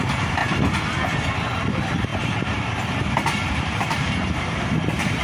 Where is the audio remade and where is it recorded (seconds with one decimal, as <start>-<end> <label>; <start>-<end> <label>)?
0.0-0.4 remade; 0.4-1.7 recorded; 1.7-5.2 remade